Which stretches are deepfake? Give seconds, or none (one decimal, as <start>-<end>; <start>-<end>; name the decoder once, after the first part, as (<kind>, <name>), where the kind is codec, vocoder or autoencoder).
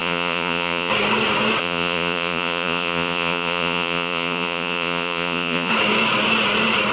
0.0-0.9 (vocoder, Vocos); 1.6-5.7